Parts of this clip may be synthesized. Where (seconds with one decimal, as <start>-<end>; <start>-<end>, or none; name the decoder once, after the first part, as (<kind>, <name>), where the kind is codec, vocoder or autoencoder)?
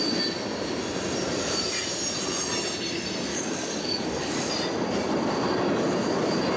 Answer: 3.3-4.5 (codec, DAC)